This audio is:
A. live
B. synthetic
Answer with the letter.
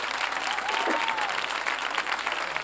A